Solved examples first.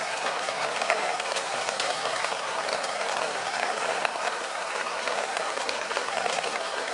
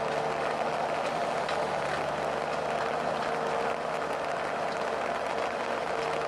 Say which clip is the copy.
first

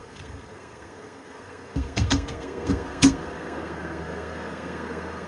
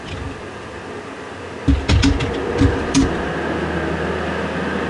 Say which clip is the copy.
first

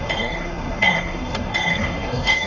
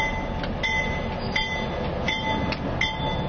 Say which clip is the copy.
first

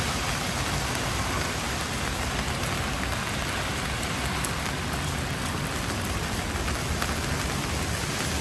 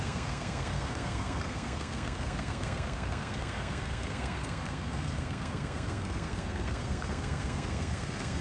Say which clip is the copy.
second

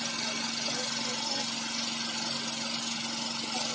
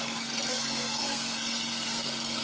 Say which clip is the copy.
second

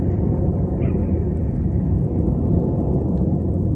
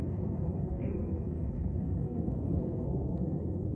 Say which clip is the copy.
second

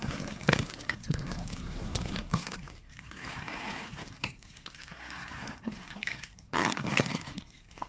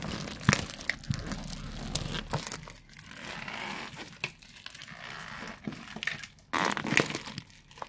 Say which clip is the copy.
first